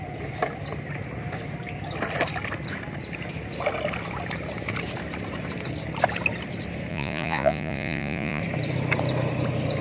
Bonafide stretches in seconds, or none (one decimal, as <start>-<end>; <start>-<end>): 0.0-6.9; 8.4-9.8